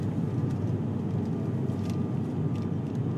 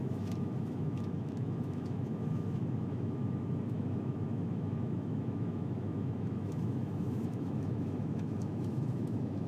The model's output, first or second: second